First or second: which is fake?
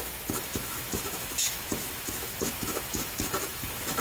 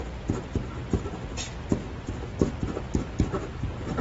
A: first